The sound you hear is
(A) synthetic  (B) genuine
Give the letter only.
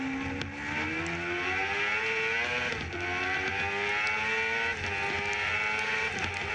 B